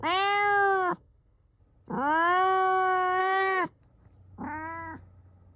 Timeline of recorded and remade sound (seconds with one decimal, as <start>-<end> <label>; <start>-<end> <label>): 0.0-0.9 recorded; 0.9-1.6 remade; 1.6-3.2 recorded; 3.2-3.8 remade; 3.8-5.6 recorded